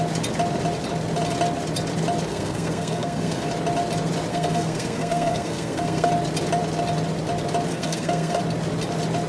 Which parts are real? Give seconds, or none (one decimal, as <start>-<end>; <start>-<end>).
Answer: 0.0-2.3; 3.5-4.3; 6.1-7.7; 8.4-9.3